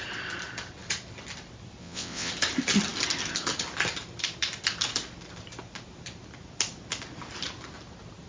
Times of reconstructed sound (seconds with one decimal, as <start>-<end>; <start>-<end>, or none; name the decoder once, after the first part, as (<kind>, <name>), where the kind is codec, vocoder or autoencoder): 1.8-2.3 (vocoder, WaveNeXt)